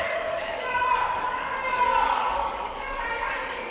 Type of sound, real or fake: fake